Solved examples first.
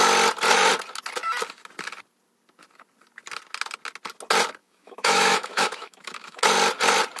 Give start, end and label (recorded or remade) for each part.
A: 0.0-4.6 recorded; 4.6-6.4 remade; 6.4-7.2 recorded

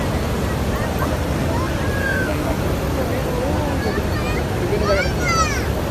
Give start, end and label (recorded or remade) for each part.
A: 0.0-2.0 recorded; 2.0-2.6 remade; 2.6-5.9 recorded

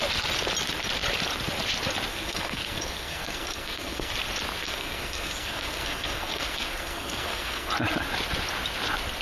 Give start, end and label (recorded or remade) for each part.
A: 0.0-2.1 recorded; 2.1-4.1 remade; 4.1-4.6 recorded; 4.6-7.7 remade; 7.7-9.2 recorded

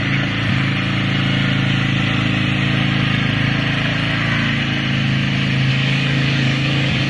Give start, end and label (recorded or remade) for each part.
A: 0.0-5.7 recorded; 5.7-7.1 remade